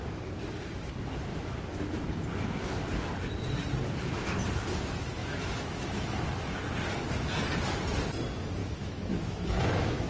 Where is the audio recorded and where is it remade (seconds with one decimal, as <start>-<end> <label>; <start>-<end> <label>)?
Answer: 0.0-5.2 recorded; 5.2-6.3 remade; 6.3-8.6 recorded; 8.6-10.1 remade